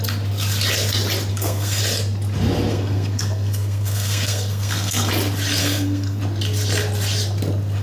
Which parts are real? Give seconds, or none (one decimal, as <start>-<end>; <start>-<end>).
0.0-1.3; 1.8-2.7; 5.1-5.6; 6.2-7.8